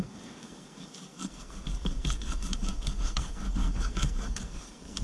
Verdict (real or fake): fake